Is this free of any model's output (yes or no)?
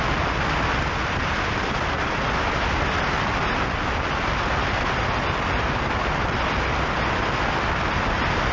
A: yes